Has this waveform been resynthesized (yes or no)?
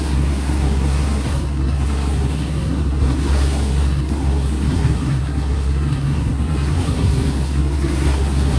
yes